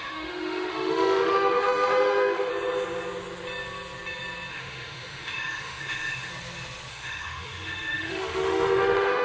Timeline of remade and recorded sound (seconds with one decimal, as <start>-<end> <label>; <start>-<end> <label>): 0.0-2.5 remade; 2.5-4.5 recorded; 4.5-6.3 remade; 6.3-6.9 recorded; 6.9-9.2 remade

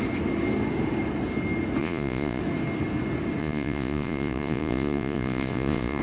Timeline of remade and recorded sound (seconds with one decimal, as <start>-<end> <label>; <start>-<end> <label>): 0.0-1.8 recorded; 1.8-2.4 remade; 2.4-3.4 recorded; 3.4-6.0 remade

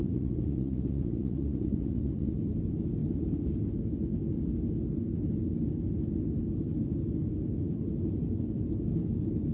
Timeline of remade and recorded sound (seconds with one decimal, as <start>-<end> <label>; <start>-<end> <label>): 0.0-2.4 remade; 2.4-9.5 recorded

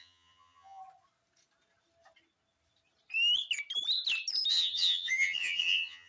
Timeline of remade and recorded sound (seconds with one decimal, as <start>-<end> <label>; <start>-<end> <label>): 0.0-0.8 remade; 0.8-4.5 recorded; 4.5-6.1 remade

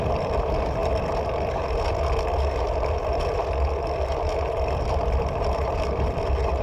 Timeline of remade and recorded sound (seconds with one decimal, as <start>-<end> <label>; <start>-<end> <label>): 0.0-0.8 remade; 0.8-4.8 recorded; 4.8-6.6 remade